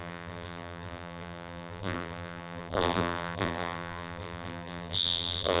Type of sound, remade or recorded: remade